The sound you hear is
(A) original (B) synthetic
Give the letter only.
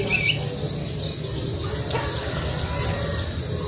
A